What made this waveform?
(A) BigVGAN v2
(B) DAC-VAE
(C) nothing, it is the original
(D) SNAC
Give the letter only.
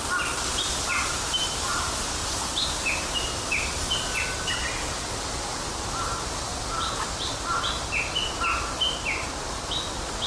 C